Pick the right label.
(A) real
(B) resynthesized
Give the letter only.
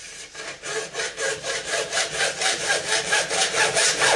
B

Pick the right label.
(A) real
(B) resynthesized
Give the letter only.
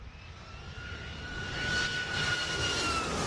A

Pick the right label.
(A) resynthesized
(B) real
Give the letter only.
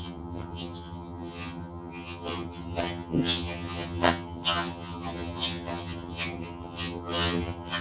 A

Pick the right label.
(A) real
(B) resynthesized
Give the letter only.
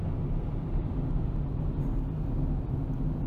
A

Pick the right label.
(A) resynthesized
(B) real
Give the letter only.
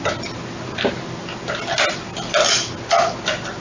B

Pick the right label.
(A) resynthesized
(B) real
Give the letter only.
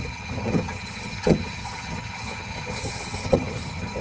A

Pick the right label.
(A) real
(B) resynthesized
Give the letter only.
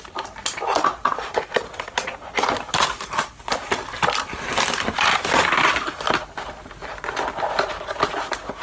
A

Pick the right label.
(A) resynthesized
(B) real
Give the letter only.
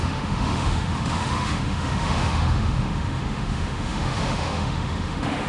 A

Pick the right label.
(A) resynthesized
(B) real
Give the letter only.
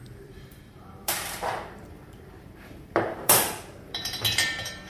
A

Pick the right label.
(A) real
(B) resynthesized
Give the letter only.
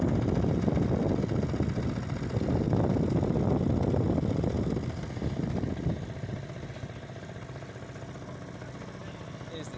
A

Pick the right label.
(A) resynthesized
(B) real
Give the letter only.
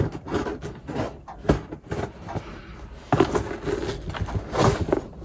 B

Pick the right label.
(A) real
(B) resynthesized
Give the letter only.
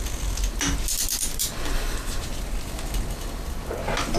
A